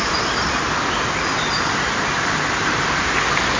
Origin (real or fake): real